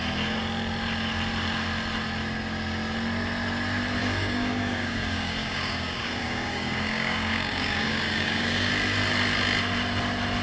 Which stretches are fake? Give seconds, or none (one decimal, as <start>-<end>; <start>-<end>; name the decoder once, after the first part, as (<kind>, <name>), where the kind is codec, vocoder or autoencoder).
4.0-8.7 (codec, DAC)